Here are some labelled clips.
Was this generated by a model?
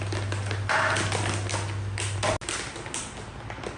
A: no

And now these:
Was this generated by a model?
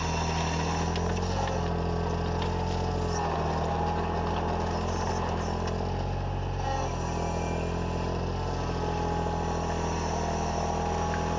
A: no